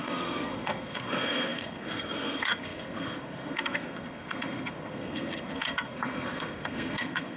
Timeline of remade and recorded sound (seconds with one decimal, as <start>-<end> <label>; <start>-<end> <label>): 0.0-7.4 remade